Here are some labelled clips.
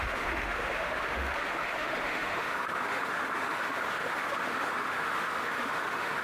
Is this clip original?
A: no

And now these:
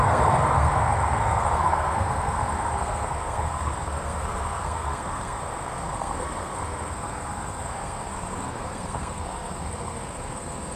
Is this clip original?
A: no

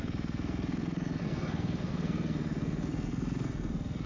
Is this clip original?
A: no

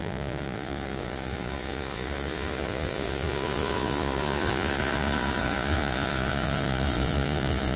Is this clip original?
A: no